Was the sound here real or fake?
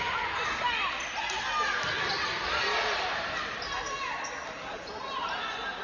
real